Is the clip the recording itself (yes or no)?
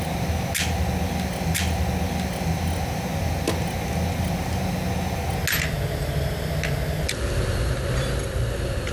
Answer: yes